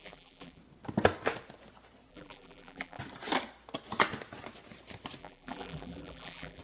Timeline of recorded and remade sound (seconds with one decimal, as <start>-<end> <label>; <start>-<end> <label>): 0.0-0.6 remade; 0.6-2.1 recorded; 2.1-3.0 remade; 3.0-5.2 recorded; 5.2-6.6 remade